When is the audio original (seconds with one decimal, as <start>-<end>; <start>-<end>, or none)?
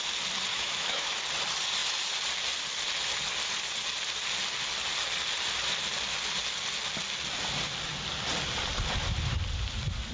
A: 0.0-0.5; 1.2-10.1